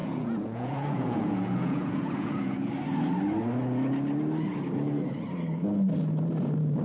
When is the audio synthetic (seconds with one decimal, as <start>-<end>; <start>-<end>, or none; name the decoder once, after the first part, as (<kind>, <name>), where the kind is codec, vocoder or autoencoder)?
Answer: 0.0-2.7 (vocoder, Vocos)